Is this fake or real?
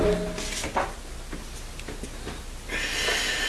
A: real